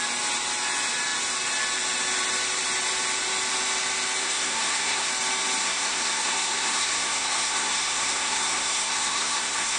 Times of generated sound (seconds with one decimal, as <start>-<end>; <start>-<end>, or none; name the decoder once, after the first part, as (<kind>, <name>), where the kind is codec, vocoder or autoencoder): 4.2-5.1 (codec, SNAC); 5.6-9.8

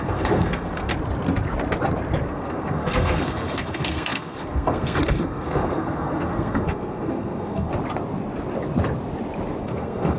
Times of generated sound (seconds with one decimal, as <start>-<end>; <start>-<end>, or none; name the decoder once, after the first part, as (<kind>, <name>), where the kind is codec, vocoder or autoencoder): 0.0-0.9 (codec, SNAC); 2.3-7.7; 9.6-10.2

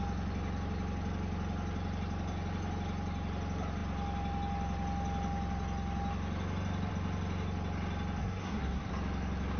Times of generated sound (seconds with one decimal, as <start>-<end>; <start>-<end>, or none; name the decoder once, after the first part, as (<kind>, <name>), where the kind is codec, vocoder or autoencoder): 8.2-8.9 (codec, SNAC)

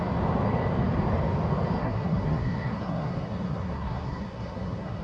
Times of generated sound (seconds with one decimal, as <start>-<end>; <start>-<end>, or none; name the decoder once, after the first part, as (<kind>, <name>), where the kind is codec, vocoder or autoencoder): 1.8-5.0 (codec, SNAC)

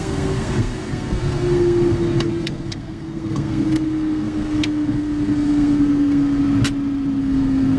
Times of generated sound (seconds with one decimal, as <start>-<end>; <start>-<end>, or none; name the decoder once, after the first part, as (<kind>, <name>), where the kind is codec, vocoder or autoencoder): 0.0-6.4 (codec, SNAC); 7.2-7.8

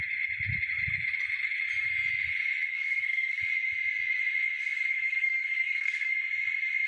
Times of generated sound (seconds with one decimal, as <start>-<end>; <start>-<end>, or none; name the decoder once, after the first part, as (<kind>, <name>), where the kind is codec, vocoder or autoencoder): 2.7-3.4 (codec, SNAC); 4.9-6.1